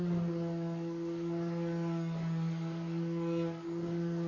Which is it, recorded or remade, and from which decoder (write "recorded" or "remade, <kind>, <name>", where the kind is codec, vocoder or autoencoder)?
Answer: remade, codec, DAC